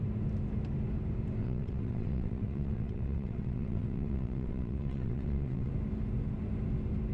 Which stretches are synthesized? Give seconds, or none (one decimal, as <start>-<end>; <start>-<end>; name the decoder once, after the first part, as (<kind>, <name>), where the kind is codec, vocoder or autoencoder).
1.4-5.7 (vocoder, WaveNeXt)